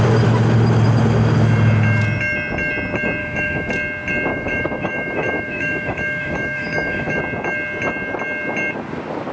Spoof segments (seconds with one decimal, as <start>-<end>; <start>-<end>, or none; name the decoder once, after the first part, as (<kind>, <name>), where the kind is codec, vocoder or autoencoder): 3.2-3.7 (autoencoder, DAC-VAE); 4.3-7.2